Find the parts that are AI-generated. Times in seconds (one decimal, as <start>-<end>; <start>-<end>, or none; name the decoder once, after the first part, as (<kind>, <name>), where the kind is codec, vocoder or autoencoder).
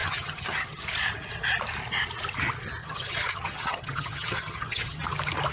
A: 0.0-0.8 (vocoder, HiFi-GAN); 2.8-5.0